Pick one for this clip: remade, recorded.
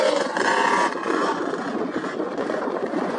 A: remade